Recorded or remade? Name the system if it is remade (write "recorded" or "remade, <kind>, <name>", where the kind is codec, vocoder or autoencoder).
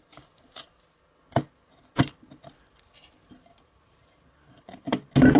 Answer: recorded